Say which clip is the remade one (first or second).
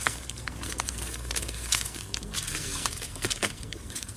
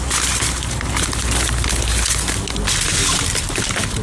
first